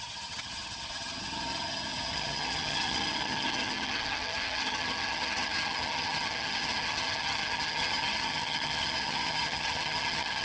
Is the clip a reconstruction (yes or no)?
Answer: yes